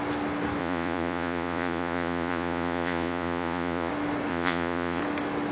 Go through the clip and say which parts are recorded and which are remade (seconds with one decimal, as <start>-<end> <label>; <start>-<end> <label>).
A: 0.0-0.6 recorded; 0.6-3.9 remade; 3.9-4.3 recorded; 4.3-5.0 remade; 5.0-5.5 recorded